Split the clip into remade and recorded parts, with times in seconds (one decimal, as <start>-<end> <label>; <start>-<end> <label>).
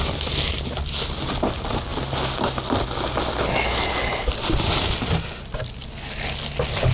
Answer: 0.0-6.9 recorded